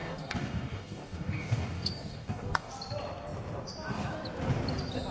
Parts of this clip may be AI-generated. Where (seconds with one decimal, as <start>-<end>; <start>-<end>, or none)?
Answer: 0.0-2.7